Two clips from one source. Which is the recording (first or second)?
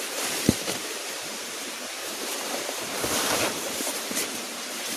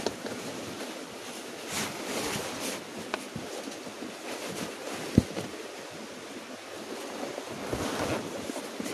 second